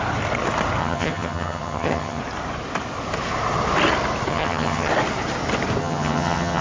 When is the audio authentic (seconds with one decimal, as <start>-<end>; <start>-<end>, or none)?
0.0-0.8; 2.2-4.3; 4.9-5.8